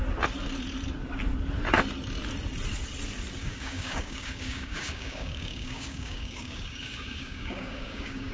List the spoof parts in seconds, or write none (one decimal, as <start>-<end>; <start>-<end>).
3.4-8.3